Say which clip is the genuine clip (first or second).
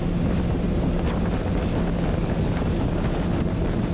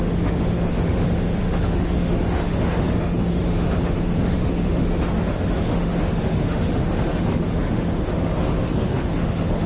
first